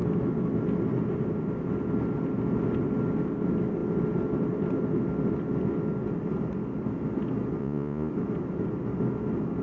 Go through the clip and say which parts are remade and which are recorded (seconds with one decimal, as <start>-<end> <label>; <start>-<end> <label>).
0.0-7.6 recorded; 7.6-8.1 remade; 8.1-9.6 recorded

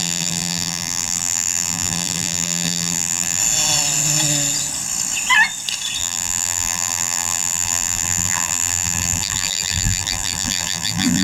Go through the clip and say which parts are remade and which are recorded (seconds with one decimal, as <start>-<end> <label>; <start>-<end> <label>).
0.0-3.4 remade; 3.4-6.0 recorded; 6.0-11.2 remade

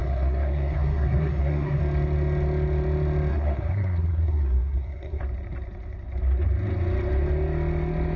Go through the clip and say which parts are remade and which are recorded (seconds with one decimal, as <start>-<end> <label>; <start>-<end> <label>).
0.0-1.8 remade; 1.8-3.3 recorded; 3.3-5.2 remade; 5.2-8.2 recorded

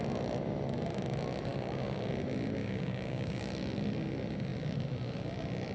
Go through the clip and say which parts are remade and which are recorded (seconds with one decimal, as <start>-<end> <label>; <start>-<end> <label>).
0.0-1.5 recorded; 1.5-2.1 remade; 2.1-2.6 recorded; 2.6-3.5 remade; 3.5-5.7 recorded

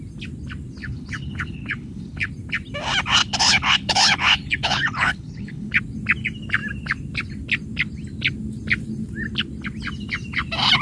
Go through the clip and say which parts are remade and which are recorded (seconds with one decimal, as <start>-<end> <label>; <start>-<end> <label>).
0.0-0.8 recorded; 0.8-2.3 remade; 2.3-3.2 recorded; 3.2-5.8 remade; 5.8-10.8 recorded

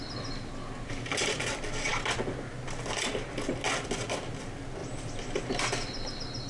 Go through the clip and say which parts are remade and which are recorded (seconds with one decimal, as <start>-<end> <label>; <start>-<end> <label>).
0.0-6.5 recorded

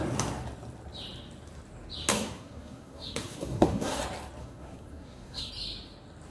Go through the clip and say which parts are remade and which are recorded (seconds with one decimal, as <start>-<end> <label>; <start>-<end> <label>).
0.0-2.1 recorded; 2.1-4.0 remade; 4.0-4.4 recorded; 4.4-5.5 remade; 5.5-6.3 recorded